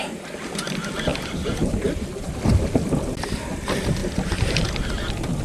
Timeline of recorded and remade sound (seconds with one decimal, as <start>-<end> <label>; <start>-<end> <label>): 0.0-5.4 recorded